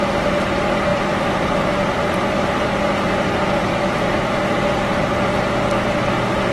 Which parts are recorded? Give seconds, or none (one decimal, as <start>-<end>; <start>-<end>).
0.0-0.9; 4.8-6.5